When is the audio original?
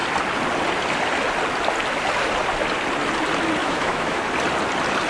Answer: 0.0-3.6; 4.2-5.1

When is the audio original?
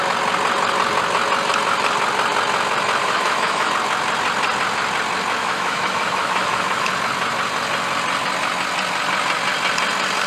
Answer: 0.0-3.0; 3.7-5.4; 6.9-10.3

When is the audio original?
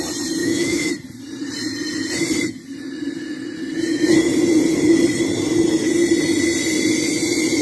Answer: 0.0-0.4; 0.9-7.6